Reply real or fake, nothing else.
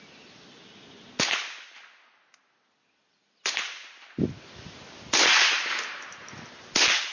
real